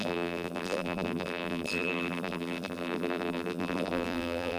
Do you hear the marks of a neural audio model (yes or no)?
yes